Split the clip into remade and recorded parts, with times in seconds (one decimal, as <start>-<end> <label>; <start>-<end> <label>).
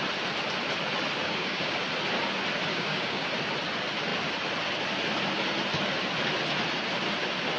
0.0-1.2 recorded; 1.2-1.8 remade; 1.8-2.7 recorded; 2.7-3.3 remade; 3.3-7.6 recorded